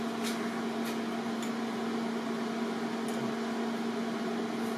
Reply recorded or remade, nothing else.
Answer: recorded